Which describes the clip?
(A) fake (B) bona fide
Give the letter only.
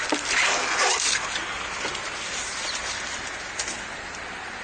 B